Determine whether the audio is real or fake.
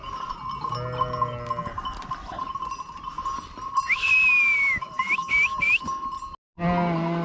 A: real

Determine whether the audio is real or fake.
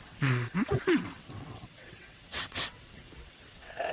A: fake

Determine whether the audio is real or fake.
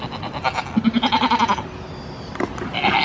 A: real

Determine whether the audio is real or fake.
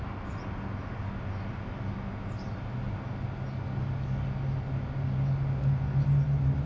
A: real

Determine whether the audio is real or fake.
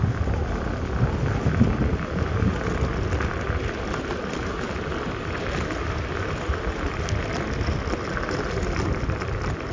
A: real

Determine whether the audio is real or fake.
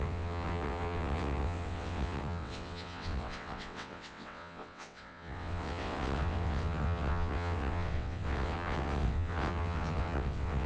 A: fake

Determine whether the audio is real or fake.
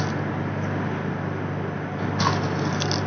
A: real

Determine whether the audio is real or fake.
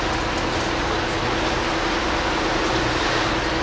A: real